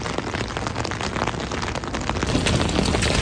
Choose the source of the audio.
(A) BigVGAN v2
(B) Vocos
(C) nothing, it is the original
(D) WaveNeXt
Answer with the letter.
C